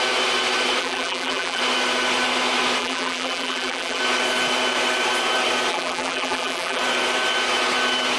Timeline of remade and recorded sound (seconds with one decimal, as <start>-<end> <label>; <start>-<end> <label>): 0.0-0.8 recorded; 0.8-1.6 remade; 1.6-2.8 recorded; 2.8-4.0 remade; 4.0-5.7 recorded; 5.7-6.8 remade; 6.8-8.2 recorded